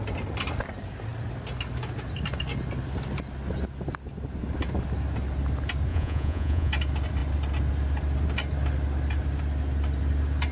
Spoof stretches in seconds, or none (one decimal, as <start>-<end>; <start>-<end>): 5.9-6.7